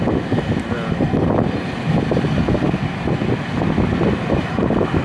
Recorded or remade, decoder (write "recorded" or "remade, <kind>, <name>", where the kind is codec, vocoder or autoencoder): recorded